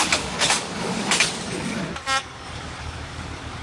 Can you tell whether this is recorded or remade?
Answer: remade